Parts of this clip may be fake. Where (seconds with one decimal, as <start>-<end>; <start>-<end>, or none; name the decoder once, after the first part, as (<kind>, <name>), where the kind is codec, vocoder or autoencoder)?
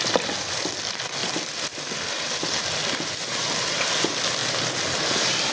none